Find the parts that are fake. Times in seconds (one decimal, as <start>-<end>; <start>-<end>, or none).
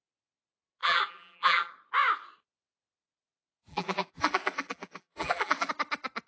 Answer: 0.8-1.7; 3.7-5.7